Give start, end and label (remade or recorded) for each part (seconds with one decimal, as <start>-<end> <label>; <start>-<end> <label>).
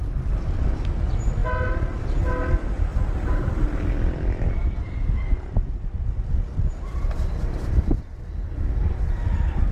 0.0-9.7 recorded